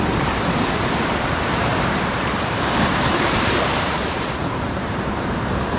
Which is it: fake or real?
fake